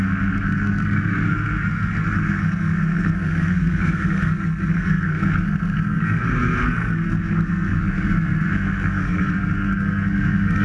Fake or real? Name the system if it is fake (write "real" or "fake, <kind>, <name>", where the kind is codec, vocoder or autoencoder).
fake, codec, SNAC